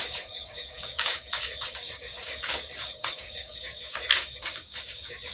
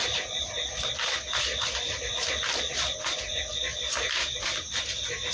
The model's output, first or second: first